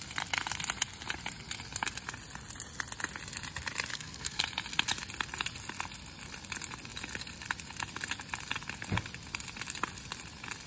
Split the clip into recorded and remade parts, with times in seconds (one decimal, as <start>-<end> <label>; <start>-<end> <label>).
0.0-3.9 recorded; 3.9-4.4 remade; 4.4-10.7 recorded